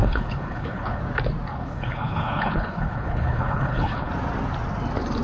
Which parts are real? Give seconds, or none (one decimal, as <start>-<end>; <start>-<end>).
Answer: 1.0-1.5; 4.1-5.2